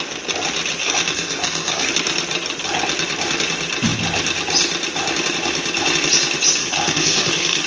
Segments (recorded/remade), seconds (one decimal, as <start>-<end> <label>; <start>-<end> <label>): 0.0-0.8 recorded; 0.8-1.9 remade; 1.9-6.6 recorded; 6.6-7.7 remade